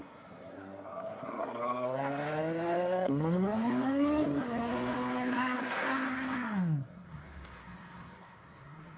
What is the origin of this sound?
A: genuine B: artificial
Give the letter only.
B